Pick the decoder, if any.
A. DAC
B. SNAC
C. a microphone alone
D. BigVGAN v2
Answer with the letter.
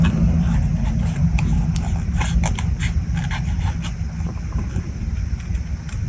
C